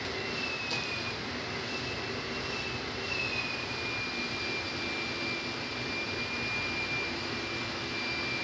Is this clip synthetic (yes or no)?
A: no